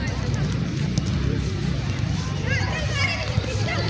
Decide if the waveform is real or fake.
real